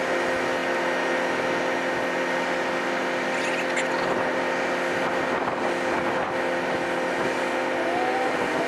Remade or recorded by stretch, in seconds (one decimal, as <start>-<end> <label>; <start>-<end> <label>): 0.0-8.7 recorded